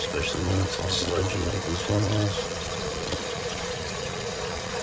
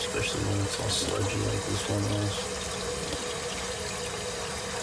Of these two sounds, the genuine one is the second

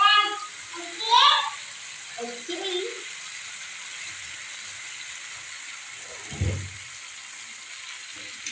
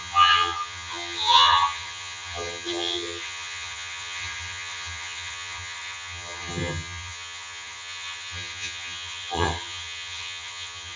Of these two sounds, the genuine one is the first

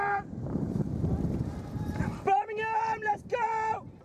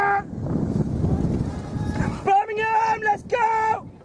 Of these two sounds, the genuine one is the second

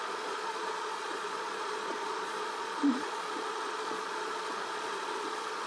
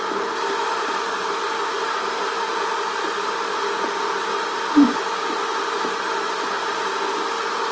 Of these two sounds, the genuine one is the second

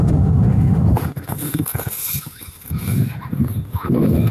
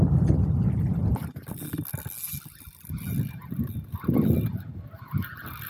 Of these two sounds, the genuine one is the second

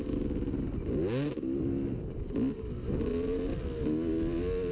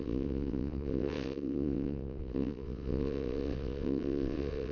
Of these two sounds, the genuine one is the first